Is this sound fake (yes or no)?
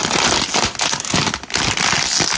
no